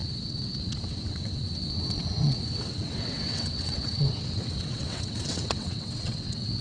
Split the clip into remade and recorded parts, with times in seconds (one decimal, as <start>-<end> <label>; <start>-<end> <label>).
0.0-6.6 remade